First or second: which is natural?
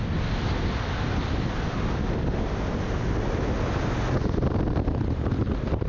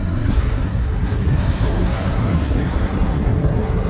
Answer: first